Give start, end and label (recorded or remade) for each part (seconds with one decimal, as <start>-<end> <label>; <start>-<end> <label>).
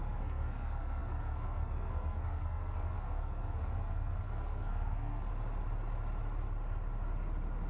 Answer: 0.0-5.3 remade; 5.3-7.7 recorded